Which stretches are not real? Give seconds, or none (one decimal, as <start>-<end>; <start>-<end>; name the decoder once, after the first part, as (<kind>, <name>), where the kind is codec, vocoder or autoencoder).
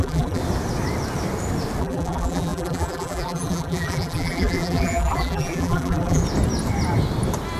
0.0-0.4 (vocoder, BigVGAN v2); 1.8-6.2